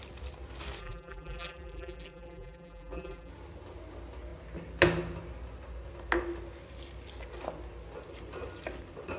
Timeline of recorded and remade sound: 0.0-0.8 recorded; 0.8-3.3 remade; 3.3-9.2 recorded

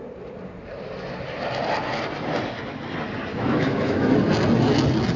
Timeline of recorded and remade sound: 0.0-3.3 recorded; 3.3-4.1 remade; 4.1-5.2 recorded